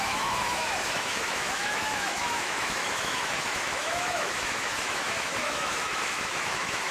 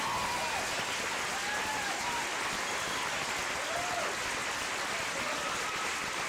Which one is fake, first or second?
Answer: first